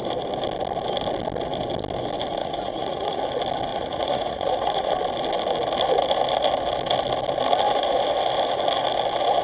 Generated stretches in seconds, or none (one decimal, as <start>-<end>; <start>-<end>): 2.4-3.2; 3.7-4.9